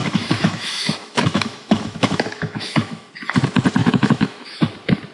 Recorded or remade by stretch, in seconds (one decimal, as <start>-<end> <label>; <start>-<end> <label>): 0.0-3.1 remade; 3.1-3.8 recorded; 3.8-4.6 remade; 4.6-5.1 recorded